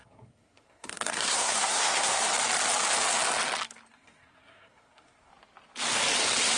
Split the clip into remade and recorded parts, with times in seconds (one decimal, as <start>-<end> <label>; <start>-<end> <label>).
0.0-2.3 remade; 2.3-3.9 recorded; 3.9-5.3 remade; 5.3-6.6 recorded